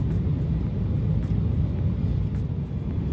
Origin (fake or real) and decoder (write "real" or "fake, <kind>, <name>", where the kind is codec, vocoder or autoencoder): real